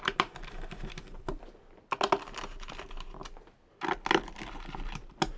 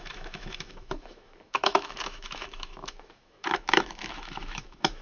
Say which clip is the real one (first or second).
first